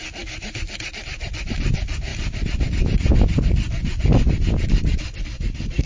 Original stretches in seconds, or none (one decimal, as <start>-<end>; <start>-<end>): 0.0-5.9